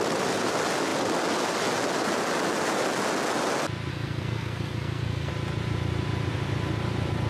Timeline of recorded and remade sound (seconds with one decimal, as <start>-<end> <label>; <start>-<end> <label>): 0.0-3.9 recorded; 3.9-5.3 remade; 5.3-7.3 recorded